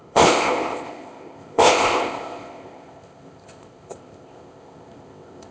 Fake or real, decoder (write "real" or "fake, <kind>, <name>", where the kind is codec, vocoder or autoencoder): fake, codec, ZipCodec